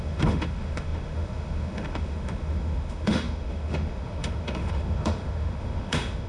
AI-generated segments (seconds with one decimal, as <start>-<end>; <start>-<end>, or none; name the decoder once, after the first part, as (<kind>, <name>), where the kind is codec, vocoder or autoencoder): 0.0-6.3 (autoencoder, DAC-VAE)